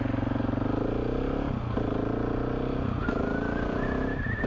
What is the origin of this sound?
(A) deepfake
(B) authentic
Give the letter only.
B